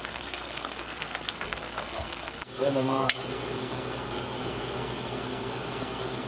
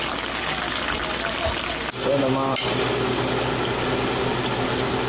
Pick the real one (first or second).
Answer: second